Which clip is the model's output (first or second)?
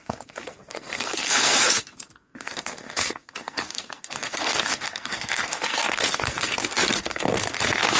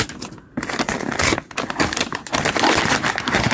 first